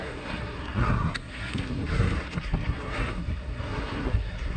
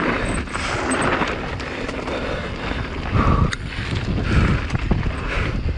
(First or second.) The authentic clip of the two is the second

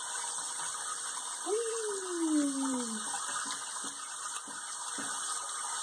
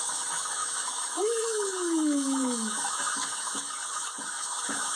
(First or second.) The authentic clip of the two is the first